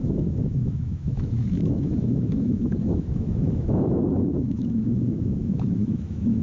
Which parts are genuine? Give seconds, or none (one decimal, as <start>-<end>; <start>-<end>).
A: none

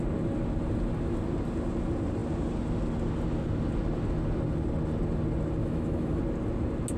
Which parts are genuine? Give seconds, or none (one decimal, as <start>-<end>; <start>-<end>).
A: 0.0-5.6; 6.2-7.0

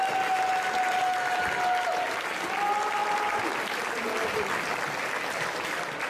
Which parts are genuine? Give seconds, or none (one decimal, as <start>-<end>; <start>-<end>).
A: 0.0-6.1

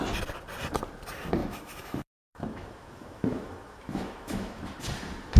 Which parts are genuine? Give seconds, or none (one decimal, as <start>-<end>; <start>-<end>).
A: 0.0-1.4; 4.6-5.4

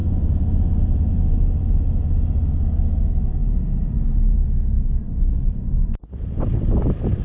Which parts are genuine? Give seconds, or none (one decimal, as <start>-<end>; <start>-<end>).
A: 0.0-7.2

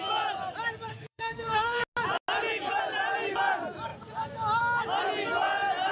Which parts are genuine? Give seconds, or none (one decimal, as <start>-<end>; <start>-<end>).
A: 0.0-0.9; 1.8-5.9